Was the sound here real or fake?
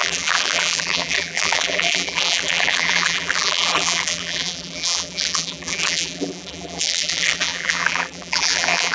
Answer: fake